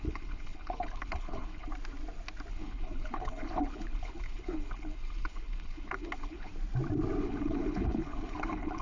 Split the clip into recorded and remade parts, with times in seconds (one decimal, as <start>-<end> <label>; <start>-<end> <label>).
0.0-1.7 remade; 1.7-2.5 recorded; 2.5-6.5 remade; 6.5-7.2 recorded; 7.2-8.8 remade